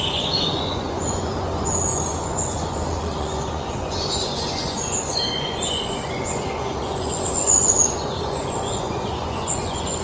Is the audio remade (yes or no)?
yes